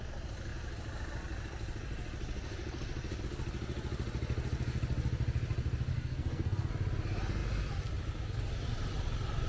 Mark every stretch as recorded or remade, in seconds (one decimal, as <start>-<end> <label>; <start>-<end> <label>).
0.0-5.9 recorded; 5.9-6.7 remade; 6.7-9.5 recorded